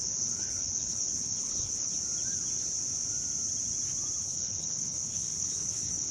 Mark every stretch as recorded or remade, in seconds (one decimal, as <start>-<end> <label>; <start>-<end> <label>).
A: 0.0-1.9 remade; 1.9-4.2 recorded; 4.2-6.1 remade